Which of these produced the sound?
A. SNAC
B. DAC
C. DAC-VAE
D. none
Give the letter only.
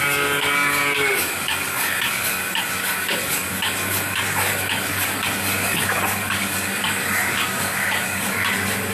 B